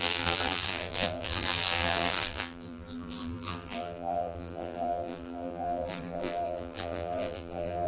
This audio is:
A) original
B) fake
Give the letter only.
B